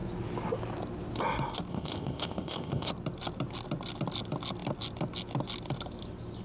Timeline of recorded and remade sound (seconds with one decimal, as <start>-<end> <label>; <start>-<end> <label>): 0.0-1.7 recorded; 1.7-2.9 remade; 2.9-6.4 recorded